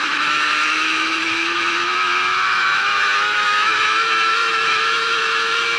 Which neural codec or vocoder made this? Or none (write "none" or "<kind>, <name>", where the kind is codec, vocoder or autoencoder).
autoencoder, DAC-VAE